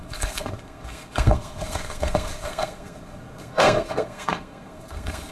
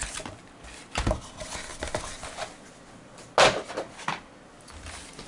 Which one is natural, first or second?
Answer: second